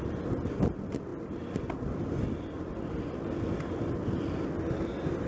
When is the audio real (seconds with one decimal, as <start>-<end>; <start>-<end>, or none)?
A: 0.0-5.3